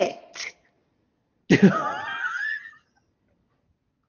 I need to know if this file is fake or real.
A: real